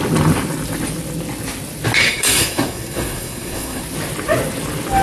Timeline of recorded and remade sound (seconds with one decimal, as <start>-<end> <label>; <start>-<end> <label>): 0.0-2.0 recorded; 2.0-3.8 remade; 3.8-5.0 recorded